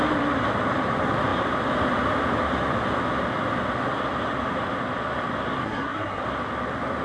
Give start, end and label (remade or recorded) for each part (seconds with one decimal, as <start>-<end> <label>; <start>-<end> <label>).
0.0-5.6 recorded; 5.6-6.2 remade; 6.2-7.0 recorded